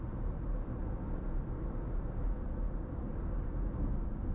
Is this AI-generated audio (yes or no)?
no